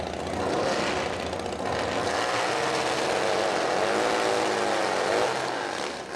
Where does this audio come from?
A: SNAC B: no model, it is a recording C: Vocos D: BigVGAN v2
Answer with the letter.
B